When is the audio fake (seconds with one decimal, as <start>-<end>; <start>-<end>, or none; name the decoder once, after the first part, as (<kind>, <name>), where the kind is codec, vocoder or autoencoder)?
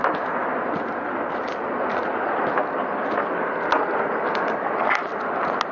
none